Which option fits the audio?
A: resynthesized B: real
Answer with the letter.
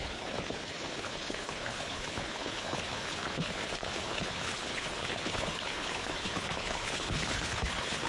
A